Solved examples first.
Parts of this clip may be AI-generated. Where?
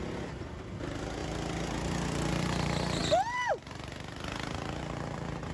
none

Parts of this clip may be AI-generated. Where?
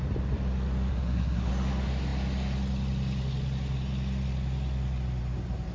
0.9-1.5 (codec, SNAC)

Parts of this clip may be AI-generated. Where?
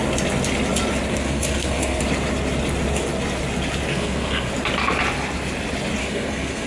1.1-2.0 (codec, SNAC); 3.9-4.5; 6.0-6.7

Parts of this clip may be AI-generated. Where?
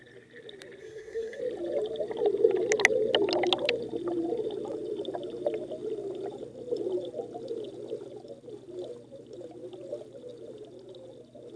0.8-1.4 (codec, SNAC)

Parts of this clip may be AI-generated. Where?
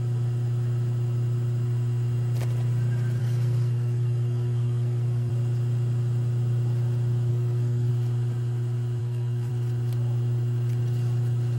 3.2-5.3 (codec, SNAC); 7.3-7.9; 9.0-9.5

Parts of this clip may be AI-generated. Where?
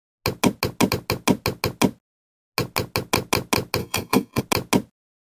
3.8-4.4 (codec, SNAC)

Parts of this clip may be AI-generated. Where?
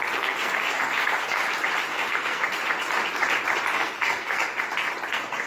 0.0-1.4 (codec, SNAC); 1.9-2.4; 3.7-4.5; 5.1-5.5